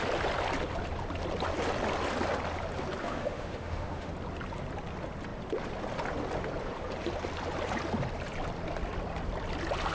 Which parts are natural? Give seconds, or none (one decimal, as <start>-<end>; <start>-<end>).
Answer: 0.0-3.0; 4.1-9.9